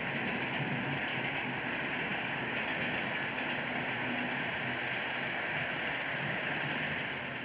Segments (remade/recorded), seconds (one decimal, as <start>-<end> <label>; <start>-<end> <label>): 0.0-1.1 recorded; 1.1-1.7 remade; 1.7-7.4 recorded